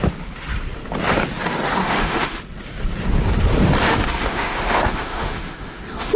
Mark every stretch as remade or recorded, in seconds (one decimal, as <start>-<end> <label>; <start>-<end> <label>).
0.0-1.8 recorded; 1.8-2.4 remade; 2.4-3.8 recorded; 3.8-6.2 remade